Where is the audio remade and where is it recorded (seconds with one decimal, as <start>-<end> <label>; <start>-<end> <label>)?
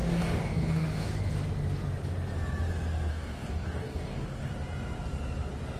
0.0-1.2 remade; 1.2-3.1 recorded; 3.1-4.5 remade; 4.5-5.8 recorded